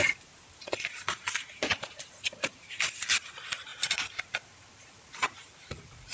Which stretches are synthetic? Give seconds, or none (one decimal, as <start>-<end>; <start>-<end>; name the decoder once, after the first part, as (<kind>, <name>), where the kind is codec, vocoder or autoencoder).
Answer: none